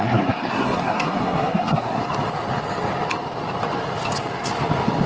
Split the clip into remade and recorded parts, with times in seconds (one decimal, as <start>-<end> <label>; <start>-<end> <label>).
0.0-2.0 remade; 2.0-5.1 recorded